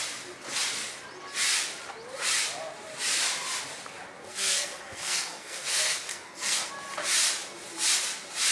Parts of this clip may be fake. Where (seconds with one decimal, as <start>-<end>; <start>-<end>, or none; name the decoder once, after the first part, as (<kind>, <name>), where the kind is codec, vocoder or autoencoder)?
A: 4.2-6.7 (codec, SNAC)